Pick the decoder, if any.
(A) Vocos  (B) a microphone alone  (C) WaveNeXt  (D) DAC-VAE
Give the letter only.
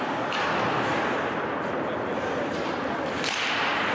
B